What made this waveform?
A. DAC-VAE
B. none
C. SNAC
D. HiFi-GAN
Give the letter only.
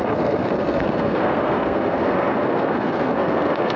C